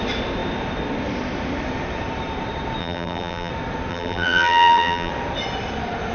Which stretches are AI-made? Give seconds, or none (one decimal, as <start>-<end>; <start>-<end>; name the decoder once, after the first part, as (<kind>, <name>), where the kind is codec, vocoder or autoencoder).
2.8-3.5 (vocoder, BigVGAN v2); 3.9-5.1